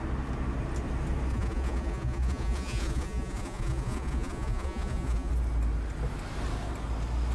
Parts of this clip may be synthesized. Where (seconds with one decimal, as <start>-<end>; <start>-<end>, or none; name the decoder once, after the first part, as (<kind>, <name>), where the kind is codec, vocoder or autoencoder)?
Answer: 1.3-5.3 (vocoder, Vocos)